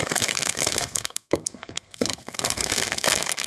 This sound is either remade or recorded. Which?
remade